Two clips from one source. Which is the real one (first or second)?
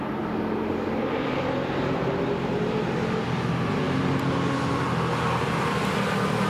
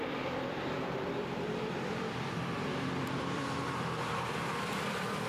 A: first